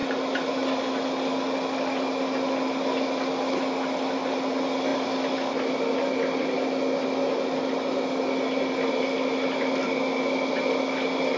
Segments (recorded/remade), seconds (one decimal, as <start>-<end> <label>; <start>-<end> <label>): 0.0-11.4 recorded